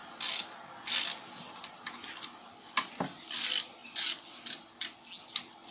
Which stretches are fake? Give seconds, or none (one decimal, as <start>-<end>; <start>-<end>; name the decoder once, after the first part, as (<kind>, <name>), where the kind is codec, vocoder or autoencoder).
none